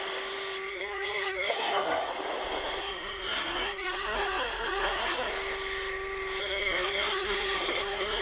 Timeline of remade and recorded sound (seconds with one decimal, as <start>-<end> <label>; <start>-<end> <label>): 0.0-0.7 recorded; 0.7-2.1 remade; 2.1-2.8 recorded; 2.8-5.3 remade; 5.3-6.4 recorded; 6.4-8.2 remade

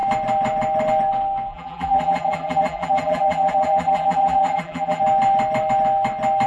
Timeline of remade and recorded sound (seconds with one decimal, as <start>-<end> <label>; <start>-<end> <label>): 0.0-1.5 recorded; 1.5-5.0 remade; 5.0-6.5 recorded

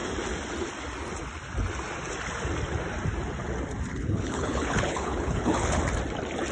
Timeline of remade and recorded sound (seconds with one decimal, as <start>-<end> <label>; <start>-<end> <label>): 0.0-3.9 recorded; 3.9-5.8 remade; 5.8-6.5 recorded

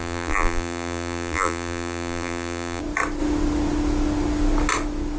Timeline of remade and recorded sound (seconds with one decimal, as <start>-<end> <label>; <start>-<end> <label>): 0.0-2.8 remade; 2.8-5.2 recorded

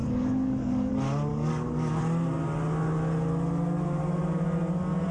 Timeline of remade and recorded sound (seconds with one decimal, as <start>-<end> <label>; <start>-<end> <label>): 0.0-0.9 remade; 0.9-1.3 recorded; 1.3-2.0 remade; 2.0-5.1 recorded

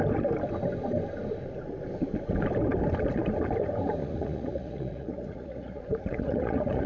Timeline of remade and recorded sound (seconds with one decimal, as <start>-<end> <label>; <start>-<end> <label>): 0.0-4.0 recorded; 4.0-6.9 remade

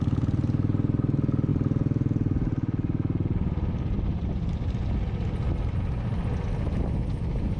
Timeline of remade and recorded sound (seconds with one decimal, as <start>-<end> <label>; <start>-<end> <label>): 0.0-7.6 recorded